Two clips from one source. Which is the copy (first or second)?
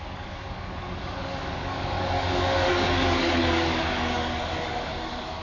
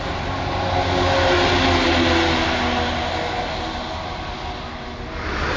first